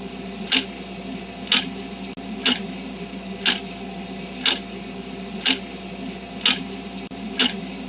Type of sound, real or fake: real